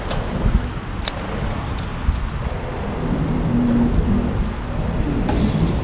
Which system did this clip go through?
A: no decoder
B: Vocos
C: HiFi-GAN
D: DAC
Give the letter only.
A